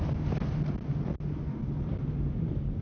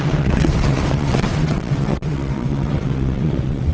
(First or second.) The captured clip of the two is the first